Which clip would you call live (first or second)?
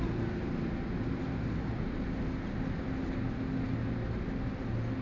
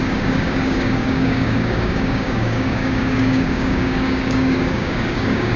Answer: first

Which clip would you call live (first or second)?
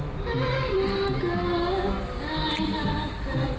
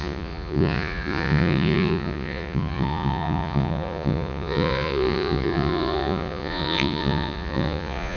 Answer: first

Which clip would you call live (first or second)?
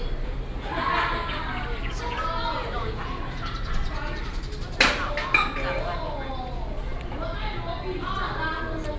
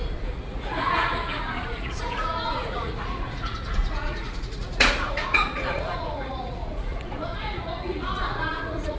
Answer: first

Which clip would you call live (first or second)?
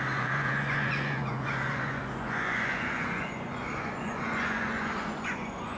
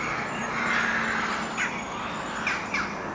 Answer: second